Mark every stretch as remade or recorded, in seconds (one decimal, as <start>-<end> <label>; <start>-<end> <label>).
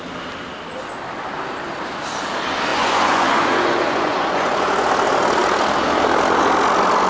0.0-2.7 recorded; 2.7-4.9 remade; 4.9-7.1 recorded